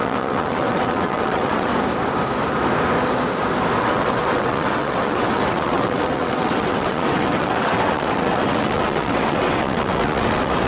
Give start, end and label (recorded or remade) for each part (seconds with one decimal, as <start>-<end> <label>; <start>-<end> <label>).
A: 0.0-1.7 remade; 1.7-3.8 recorded; 3.8-10.7 remade